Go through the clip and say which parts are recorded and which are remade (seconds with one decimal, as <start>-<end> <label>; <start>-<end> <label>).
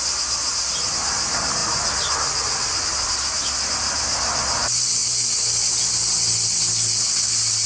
0.0-7.7 recorded